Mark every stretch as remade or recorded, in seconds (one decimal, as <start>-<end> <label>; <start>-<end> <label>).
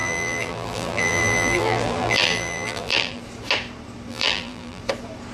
0.0-3.2 remade; 3.2-4.1 recorded; 4.1-4.8 remade; 4.8-5.3 recorded